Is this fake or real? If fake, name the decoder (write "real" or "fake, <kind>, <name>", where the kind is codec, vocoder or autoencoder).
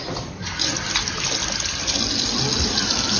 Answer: real